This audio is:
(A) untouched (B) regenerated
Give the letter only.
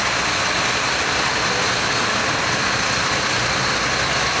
A